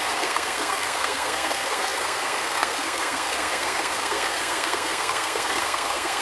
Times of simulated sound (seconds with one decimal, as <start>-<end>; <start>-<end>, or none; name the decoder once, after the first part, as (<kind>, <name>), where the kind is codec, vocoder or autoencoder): 0.0-6.2 (codec, SNAC)

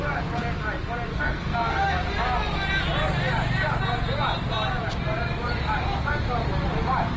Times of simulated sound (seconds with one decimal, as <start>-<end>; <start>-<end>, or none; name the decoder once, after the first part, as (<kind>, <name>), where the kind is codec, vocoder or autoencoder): 1.1-1.8 (codec, SNAC)

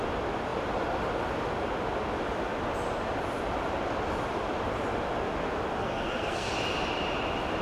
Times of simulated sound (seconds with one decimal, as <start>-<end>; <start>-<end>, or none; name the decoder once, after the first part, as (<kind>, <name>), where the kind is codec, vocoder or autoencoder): 5.8-6.5 (codec, SNAC)